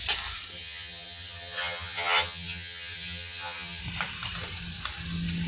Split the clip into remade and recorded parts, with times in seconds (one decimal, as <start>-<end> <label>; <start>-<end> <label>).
0.0-0.5 recorded; 0.5-3.8 remade; 3.8-5.5 recorded